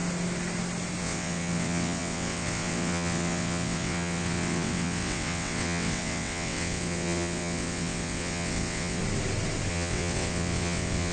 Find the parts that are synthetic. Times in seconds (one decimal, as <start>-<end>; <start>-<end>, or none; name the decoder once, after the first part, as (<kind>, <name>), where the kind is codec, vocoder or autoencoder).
1.0-9.0 (vocoder, WaveNeXt); 9.7-11.1